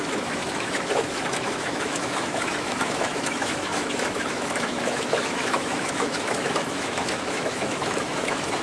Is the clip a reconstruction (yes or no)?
yes